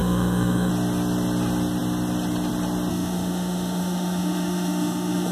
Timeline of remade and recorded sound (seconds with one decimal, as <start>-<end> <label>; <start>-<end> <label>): 0.0-0.7 remade; 0.7-2.9 recorded; 2.9-5.3 remade